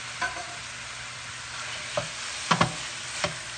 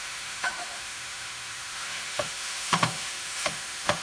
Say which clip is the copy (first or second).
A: second